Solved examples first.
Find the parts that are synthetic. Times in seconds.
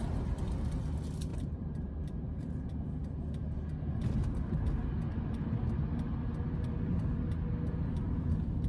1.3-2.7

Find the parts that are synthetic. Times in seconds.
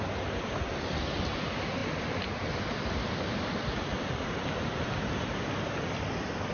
1.8-4.8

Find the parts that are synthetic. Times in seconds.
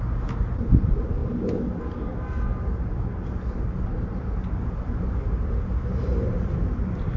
none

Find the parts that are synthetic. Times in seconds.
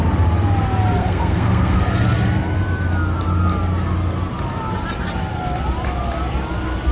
1.0-1.8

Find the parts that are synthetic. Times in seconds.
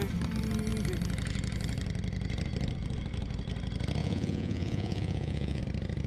4.0-5.6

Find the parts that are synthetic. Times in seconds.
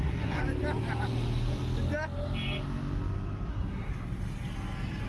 0.0-0.4; 3.5-3.9